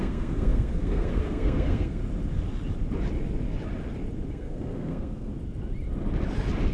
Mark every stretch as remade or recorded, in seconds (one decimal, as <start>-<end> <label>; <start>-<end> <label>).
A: 0.0-2.0 remade; 2.0-4.3 recorded; 4.3-5.3 remade; 5.3-6.7 recorded

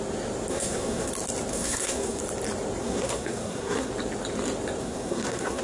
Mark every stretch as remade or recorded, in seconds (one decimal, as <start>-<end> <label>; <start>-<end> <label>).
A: 0.0-0.5 recorded; 0.5-1.1 remade; 1.1-1.5 recorded; 1.5-2.2 remade; 2.2-2.8 recorded; 2.8-3.9 remade; 3.9-4.8 recorded; 4.8-5.6 remade